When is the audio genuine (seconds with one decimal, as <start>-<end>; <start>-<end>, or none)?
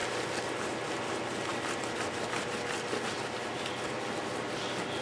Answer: 0.0-1.5; 4.5-5.0